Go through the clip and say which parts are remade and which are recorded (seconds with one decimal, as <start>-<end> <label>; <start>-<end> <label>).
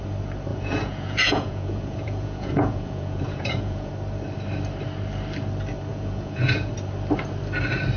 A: 0.0-0.5 recorded; 0.5-3.9 remade; 3.9-5.9 recorded; 5.9-6.7 remade; 6.7-8.0 recorded